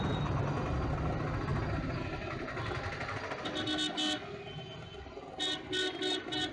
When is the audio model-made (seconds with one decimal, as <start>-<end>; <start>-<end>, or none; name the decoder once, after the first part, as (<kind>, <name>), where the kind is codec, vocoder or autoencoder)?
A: none